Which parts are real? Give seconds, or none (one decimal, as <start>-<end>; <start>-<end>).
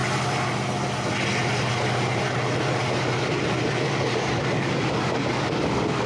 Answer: 0.0-3.7